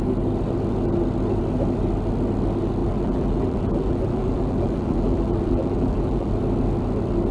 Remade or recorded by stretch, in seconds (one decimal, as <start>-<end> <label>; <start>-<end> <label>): 0.0-2.8 recorded; 2.8-6.3 remade; 6.3-7.3 recorded